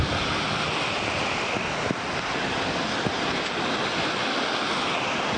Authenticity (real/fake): real